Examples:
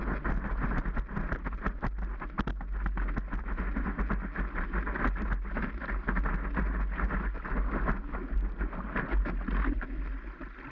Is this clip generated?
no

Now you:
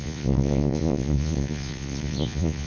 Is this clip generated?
yes